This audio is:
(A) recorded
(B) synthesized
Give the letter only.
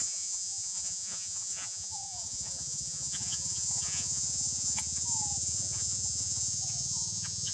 B